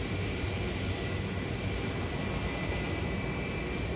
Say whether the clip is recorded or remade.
recorded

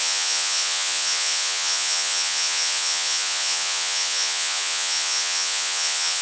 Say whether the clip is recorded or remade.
remade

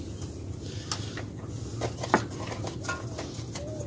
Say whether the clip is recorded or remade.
recorded